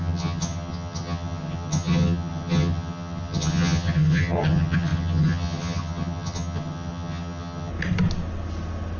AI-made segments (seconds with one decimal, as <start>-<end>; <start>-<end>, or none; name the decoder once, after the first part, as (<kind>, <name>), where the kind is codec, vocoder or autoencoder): 0.0-7.7 (vocoder, HiFi-GAN)